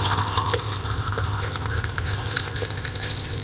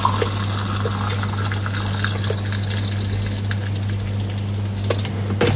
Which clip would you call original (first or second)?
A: second